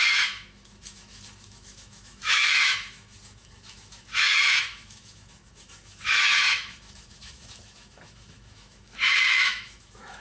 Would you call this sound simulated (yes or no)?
yes